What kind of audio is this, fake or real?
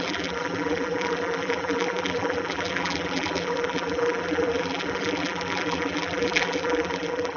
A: fake